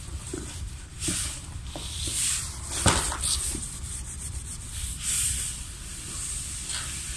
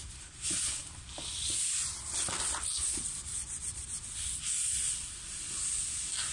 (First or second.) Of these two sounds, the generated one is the first